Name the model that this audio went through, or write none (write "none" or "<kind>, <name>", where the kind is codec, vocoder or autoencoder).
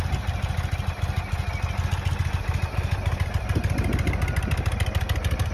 none